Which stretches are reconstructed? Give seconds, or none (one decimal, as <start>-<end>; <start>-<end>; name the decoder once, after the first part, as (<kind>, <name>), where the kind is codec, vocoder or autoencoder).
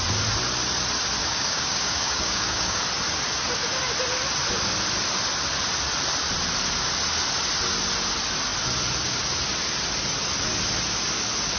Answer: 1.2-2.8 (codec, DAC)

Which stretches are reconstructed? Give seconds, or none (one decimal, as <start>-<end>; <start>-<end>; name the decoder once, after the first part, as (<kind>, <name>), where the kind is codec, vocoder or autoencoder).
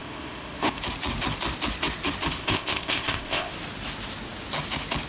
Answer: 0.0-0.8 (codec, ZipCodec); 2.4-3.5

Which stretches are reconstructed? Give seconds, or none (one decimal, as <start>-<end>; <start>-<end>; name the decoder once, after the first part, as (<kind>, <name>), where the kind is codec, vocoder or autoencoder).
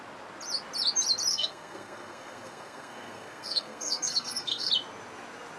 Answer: 1.3-4.7 (codec, SNAC)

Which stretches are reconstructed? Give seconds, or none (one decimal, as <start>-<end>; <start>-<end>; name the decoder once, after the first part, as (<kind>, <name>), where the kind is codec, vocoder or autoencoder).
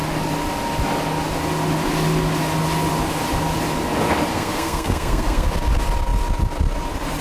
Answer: 4.3-5.5 (codec, SNAC)